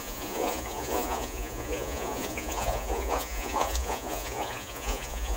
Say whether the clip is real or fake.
fake